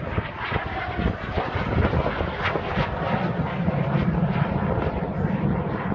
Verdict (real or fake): real